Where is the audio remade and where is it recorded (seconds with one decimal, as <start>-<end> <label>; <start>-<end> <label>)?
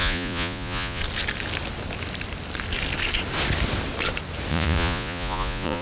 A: 0.0-1.0 remade; 1.0-4.5 recorded; 4.5-5.8 remade